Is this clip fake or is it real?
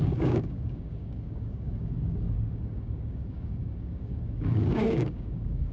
fake